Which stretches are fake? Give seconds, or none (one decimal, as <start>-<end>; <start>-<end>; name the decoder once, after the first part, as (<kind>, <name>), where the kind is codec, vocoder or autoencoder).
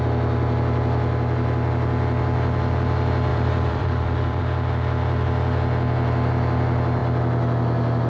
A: 3.3-4.4 (vocoder, BigVGAN v2)